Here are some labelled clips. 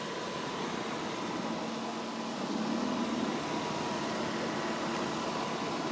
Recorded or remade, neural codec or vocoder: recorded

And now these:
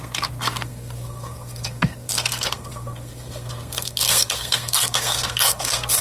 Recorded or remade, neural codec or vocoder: remade, codec, SNAC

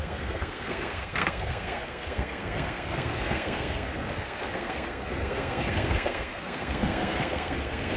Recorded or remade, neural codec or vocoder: remade, codec, SNAC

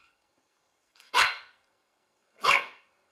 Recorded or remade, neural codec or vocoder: remade, codec, SNAC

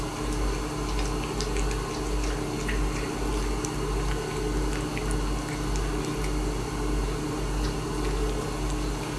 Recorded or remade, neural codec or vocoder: recorded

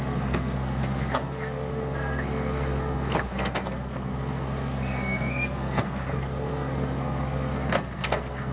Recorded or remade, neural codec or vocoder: remade, codec, SNAC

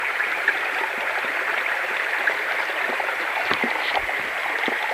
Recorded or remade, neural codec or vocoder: remade, vocoder, BigVGAN v2